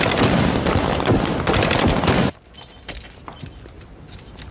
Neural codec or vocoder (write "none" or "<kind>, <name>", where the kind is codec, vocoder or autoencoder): none